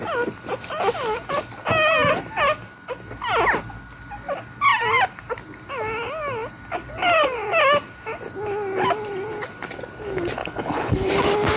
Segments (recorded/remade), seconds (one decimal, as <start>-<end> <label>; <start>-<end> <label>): 0.0-10.4 recorded; 10.4-11.1 remade; 11.1-11.6 recorded